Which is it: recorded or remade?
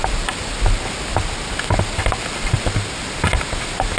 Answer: recorded